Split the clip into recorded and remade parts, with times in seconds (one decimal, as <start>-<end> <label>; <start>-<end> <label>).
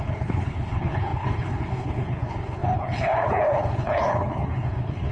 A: 0.0-5.1 remade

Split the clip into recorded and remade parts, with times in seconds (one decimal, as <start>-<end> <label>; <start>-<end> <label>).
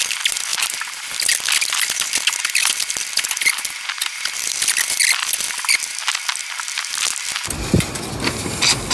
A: 0.0-8.9 recorded